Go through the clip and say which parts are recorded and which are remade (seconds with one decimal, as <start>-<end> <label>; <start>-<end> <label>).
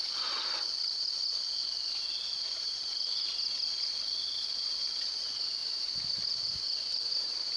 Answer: 0.0-5.6 recorded; 5.6-6.2 remade; 6.2-6.9 recorded; 6.9-7.6 remade